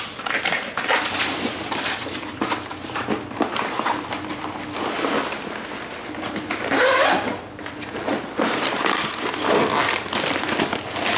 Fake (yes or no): no